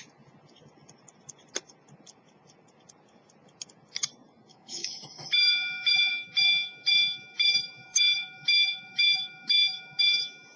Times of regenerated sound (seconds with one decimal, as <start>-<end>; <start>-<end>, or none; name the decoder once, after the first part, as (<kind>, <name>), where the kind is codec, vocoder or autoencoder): 4.5-6.1 (autoencoder, DAC-VAE); 7.8-10.0